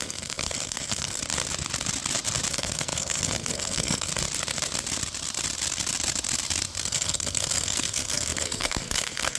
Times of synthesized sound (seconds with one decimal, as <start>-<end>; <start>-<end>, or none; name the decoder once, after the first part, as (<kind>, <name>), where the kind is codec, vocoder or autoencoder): 0.0-1.2 (codec, SNAC); 2.5-4.1; 6.8-9.4